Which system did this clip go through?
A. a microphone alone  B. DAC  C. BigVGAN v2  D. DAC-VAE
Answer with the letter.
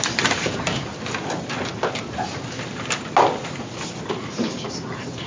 A